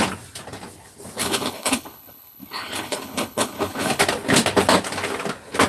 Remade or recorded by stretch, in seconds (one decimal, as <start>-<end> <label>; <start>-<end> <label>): 0.0-1.2 recorded; 1.2-4.0 remade; 4.0-5.7 recorded